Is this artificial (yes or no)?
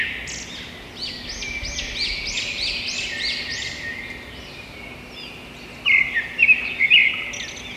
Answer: no